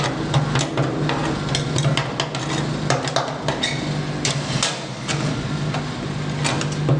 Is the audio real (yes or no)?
yes